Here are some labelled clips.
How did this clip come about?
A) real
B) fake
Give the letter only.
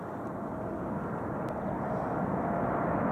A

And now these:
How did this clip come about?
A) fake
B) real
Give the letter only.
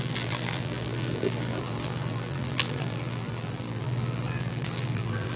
A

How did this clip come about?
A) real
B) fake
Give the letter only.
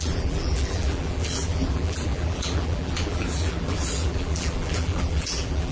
B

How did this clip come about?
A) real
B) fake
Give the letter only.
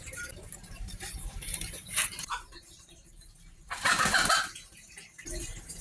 B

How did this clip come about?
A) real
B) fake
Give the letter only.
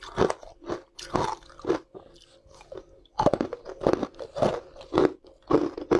A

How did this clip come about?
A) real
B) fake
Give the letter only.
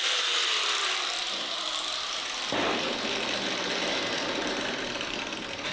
B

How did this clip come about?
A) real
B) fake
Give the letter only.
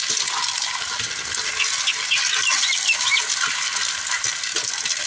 A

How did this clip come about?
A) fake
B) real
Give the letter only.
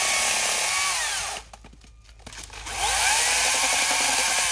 B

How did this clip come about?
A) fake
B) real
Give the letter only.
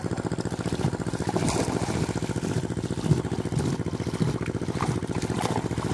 B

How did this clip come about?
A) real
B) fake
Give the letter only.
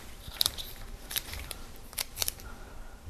B